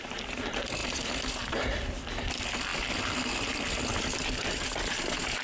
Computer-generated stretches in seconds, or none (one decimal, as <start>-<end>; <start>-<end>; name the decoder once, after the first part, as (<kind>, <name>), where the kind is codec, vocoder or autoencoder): none